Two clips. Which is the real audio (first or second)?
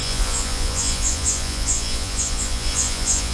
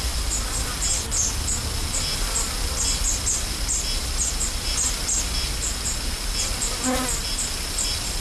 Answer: second